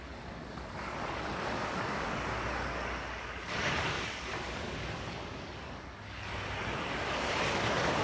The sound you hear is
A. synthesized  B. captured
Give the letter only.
A